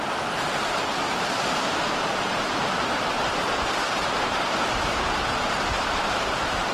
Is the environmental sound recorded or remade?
remade